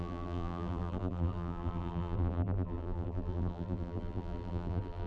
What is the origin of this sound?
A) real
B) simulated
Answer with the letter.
B